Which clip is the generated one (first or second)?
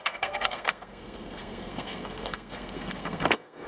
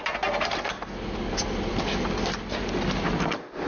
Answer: first